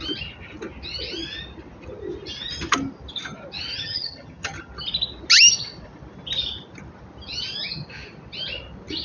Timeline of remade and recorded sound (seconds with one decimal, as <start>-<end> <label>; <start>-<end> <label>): 0.0-3.7 recorded; 3.7-4.7 remade; 4.7-9.0 recorded